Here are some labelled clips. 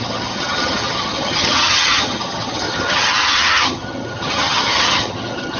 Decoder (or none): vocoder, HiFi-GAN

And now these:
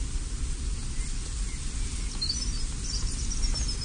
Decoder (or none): none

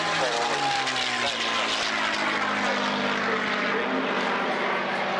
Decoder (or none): none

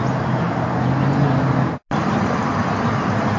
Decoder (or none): none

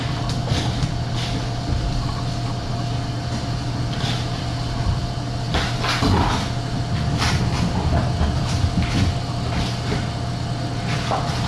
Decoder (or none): none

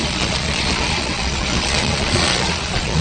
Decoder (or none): vocoder, Vocos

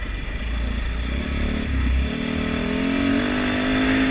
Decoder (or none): none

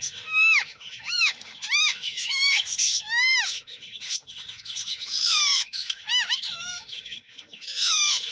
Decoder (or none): autoencoder, DAC-VAE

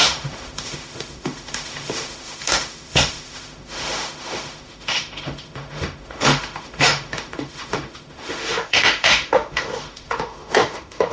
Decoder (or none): autoencoder, DAC-VAE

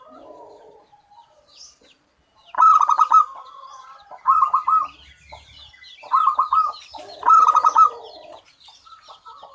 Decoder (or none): none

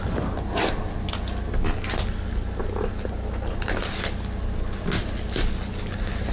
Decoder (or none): none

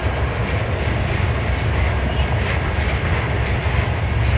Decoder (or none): none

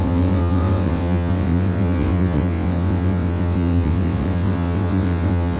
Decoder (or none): vocoder, WaveNeXt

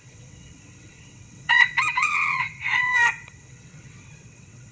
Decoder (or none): vocoder, WaveNeXt